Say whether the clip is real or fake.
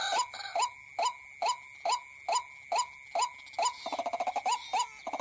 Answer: real